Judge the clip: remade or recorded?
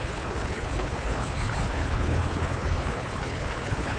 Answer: remade